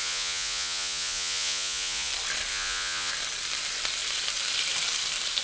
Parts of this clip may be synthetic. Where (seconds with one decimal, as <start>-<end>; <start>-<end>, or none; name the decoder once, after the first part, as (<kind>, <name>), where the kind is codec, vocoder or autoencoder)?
0.0-2.1 (vocoder, Vocos); 2.5-3.1